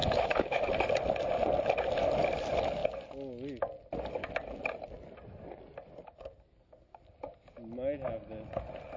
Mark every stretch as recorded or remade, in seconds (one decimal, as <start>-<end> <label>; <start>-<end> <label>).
0.0-0.7 remade; 0.7-9.0 recorded